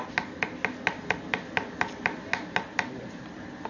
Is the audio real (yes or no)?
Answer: yes